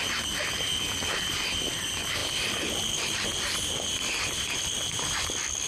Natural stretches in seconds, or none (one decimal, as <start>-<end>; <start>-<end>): 0.0-0.7; 1.7-2.2; 4.4-5.7